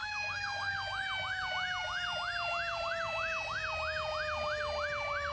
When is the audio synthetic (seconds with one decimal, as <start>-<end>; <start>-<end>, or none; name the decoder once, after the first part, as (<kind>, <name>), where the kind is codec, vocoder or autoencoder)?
0.0-0.7 (codec, DAC)